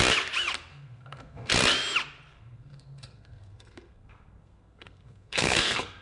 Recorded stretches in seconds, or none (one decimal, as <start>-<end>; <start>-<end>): 0.0-0.7; 1.5-2.3